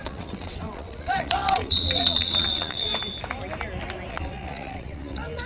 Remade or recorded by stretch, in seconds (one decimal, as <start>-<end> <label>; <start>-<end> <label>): 0.0-2.9 remade; 2.9-4.1 recorded; 4.1-5.5 remade